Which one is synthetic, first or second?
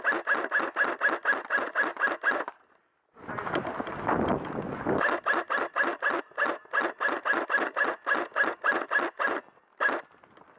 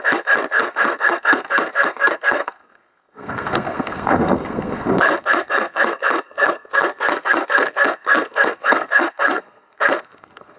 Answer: second